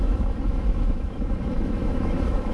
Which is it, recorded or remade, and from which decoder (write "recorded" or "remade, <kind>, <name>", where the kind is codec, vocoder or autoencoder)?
remade, autoencoder, DAC-VAE